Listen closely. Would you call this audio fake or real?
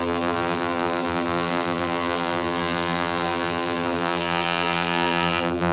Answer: fake